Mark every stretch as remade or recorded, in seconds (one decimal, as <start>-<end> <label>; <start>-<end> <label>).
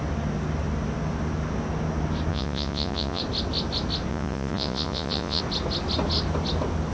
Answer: 0.0-2.3 recorded; 2.3-3.2 remade; 3.2-4.1 recorded; 4.1-5.4 remade; 5.4-6.9 recorded